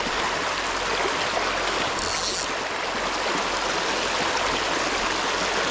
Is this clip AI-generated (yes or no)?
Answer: no